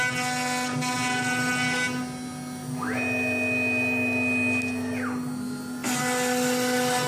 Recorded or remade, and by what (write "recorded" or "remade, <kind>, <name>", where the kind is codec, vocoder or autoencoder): recorded